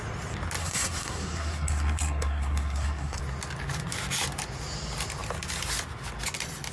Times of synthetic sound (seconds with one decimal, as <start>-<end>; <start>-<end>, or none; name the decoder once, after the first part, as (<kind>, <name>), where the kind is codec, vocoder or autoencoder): 0.6-3.2 (codec, SNAC)